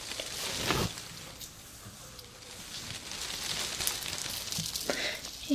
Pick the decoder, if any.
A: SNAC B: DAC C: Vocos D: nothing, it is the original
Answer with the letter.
D